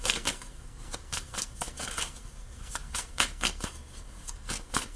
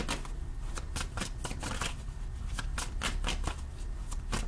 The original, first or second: second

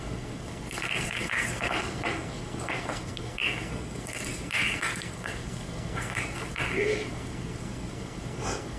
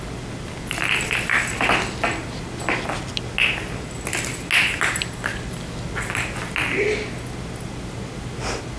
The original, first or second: second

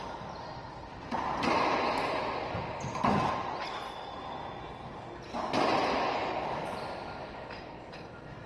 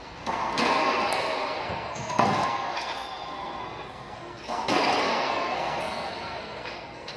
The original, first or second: first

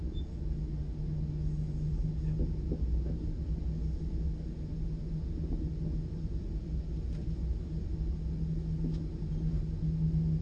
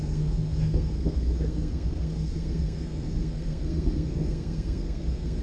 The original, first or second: first